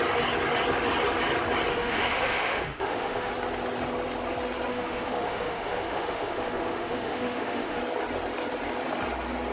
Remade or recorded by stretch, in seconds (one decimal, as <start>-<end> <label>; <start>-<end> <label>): 0.0-1.7 recorded; 1.7-3.3 remade; 3.3-4.7 recorded; 4.7-7.8 remade; 7.8-9.5 recorded